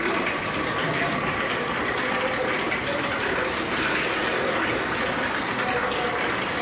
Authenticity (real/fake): fake